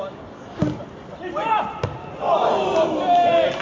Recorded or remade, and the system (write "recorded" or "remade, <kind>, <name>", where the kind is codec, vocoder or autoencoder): recorded